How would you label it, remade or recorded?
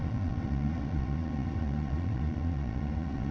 remade